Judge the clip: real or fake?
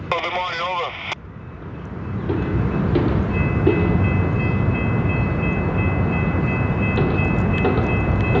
real